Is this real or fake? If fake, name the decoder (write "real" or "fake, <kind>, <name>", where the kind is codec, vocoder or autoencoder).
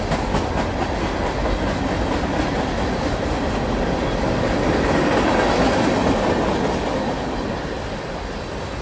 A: real